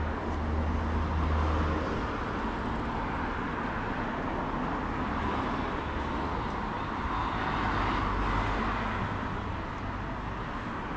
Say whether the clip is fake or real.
real